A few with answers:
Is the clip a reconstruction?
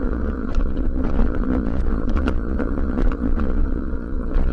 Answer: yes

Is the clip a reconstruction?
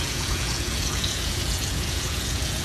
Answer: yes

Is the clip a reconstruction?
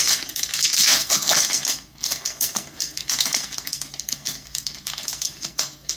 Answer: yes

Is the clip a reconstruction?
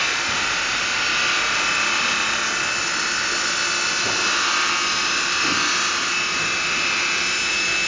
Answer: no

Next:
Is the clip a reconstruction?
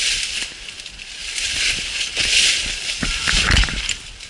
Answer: no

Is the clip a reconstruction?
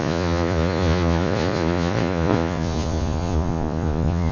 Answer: yes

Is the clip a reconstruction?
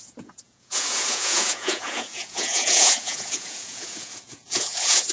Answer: yes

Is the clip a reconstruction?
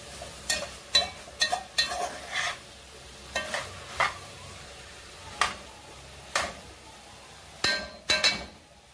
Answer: no